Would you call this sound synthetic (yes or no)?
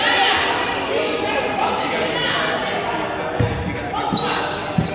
no